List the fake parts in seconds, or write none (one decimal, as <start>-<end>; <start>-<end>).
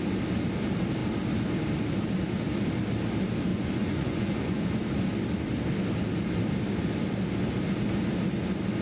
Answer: 3.5-4.6